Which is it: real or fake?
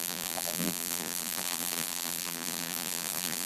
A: fake